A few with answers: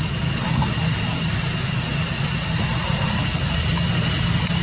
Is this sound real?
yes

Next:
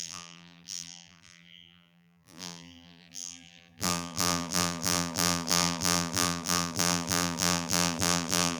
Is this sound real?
no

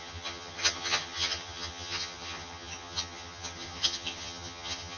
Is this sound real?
no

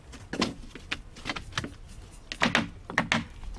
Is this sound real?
yes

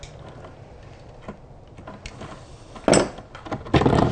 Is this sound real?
yes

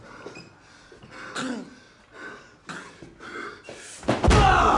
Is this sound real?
yes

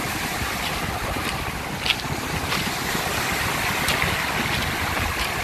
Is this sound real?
yes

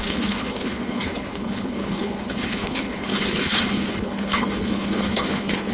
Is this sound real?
no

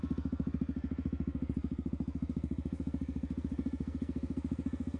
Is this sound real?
no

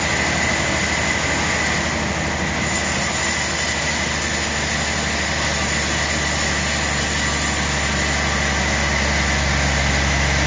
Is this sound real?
yes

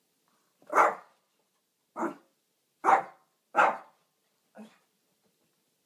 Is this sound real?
yes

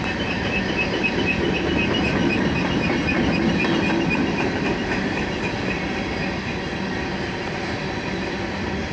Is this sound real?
no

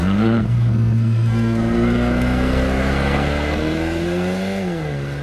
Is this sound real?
no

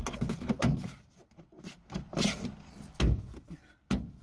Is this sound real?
yes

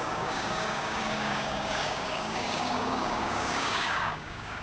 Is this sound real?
no